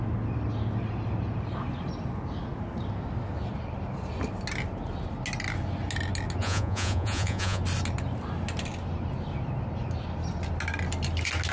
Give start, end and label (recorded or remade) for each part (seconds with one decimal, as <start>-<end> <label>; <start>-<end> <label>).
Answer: 0.0-6.4 recorded; 6.4-7.6 remade; 7.6-11.5 recorded